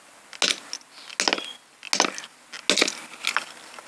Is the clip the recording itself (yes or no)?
yes